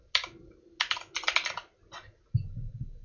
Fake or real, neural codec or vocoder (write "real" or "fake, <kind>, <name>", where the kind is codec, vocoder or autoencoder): real